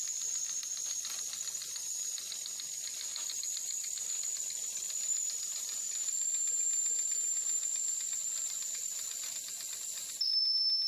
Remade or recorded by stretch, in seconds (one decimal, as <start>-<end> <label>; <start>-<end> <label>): 0.0-3.1 recorded; 3.1-4.1 remade; 4.1-7.6 recorded; 7.6-10.1 remade; 10.1-10.9 recorded